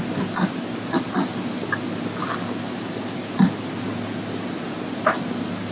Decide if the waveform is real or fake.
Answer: real